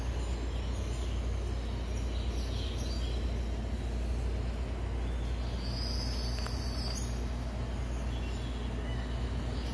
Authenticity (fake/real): real